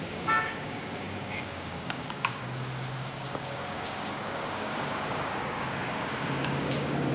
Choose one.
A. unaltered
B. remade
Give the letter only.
B